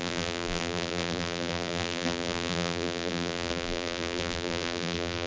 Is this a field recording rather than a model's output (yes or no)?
no